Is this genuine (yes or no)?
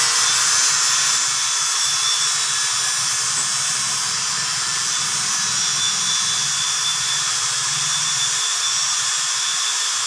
yes